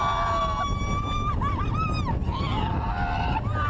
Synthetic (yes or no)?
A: no